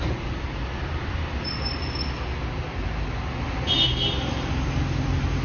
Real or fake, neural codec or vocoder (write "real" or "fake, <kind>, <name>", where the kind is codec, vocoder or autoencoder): real